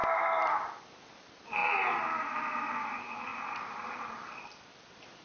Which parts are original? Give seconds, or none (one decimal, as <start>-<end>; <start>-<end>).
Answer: 0.0-5.2